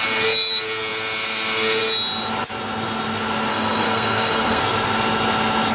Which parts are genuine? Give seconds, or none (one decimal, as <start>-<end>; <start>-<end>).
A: 0.0-3.5; 4.6-5.7